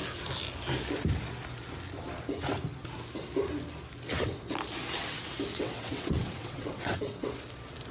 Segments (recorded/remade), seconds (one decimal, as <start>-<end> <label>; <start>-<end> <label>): 0.0-5.5 recorded; 5.5-7.3 remade; 7.3-7.9 recorded